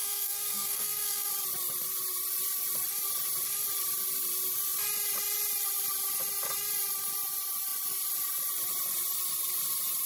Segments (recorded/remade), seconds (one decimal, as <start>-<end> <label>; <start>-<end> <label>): 0.0-1.3 remade; 1.3-10.1 recorded